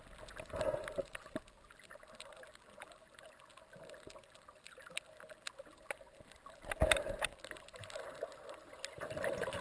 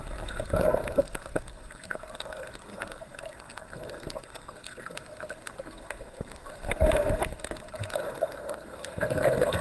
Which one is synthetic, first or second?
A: second